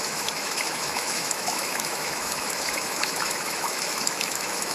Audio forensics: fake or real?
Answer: fake